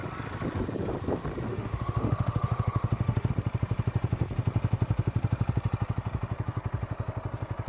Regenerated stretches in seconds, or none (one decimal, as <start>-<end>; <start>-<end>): 1.5-3.3